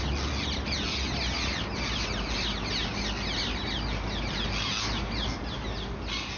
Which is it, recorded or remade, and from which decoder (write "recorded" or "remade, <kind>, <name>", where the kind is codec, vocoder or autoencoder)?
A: recorded